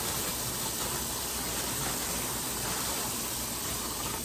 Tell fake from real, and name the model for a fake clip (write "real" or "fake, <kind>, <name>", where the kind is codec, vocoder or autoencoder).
real